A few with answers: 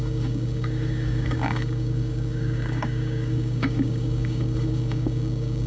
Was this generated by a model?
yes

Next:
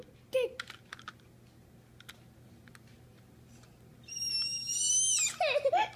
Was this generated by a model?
no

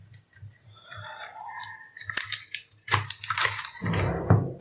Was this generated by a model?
no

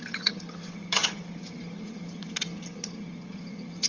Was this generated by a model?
yes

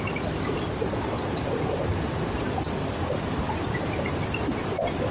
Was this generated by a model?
no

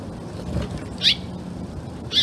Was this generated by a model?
no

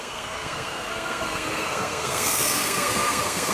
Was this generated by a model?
yes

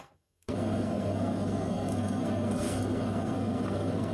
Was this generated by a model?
yes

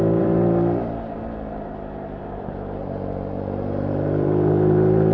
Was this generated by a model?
yes